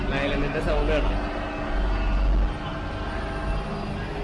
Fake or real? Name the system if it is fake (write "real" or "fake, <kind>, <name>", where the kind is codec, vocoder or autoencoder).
real